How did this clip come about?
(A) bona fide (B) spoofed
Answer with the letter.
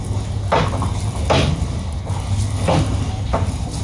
A